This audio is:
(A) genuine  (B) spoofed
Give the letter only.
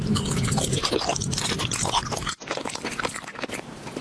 A